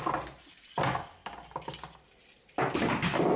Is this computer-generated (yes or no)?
no